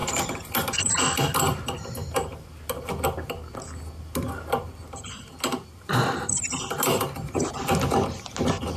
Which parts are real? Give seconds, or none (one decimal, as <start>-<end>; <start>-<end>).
0.0-8.8